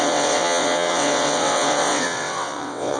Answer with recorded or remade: remade